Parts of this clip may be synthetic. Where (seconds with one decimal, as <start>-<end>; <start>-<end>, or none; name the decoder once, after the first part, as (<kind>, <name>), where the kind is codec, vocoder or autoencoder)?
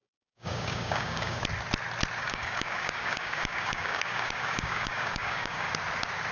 0.0-1.4 (codec, DAC); 2.2-5.7